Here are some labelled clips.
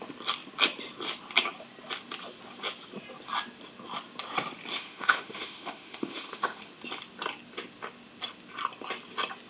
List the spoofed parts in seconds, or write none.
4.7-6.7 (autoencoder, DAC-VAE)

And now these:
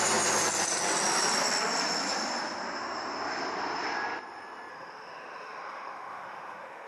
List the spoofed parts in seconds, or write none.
4.7-6.9 (autoencoder, DAC-VAE)

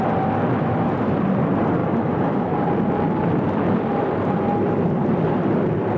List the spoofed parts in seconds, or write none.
1.8-2.5 (autoencoder, DAC-VAE)

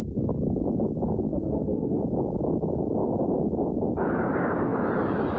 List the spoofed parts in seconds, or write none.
1.3-2.0 (autoencoder, DAC-VAE)

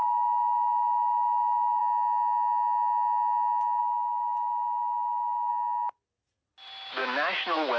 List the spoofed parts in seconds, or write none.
0.0-1.8 (autoencoder, DAC-VAE); 3.8-5.5; 7.0-7.8